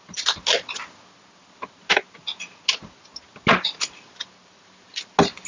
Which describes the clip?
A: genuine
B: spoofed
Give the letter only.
A